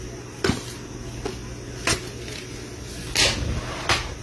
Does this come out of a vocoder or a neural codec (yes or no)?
no